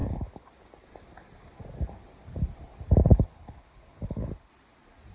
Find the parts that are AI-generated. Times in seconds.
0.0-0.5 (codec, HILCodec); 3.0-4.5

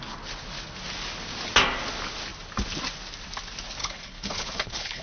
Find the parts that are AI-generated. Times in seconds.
3.8-5.0 (codec, HILCodec)

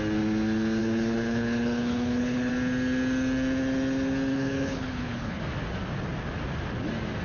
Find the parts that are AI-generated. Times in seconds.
0.8-2.5 (codec, HILCodec); 4.3-5.4

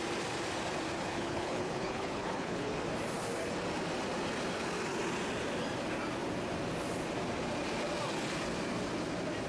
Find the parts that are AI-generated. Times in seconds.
1.1-2.8 (codec, HILCodec)